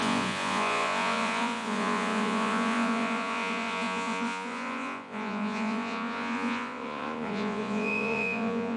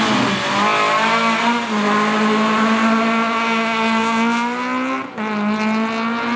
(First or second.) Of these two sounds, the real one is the second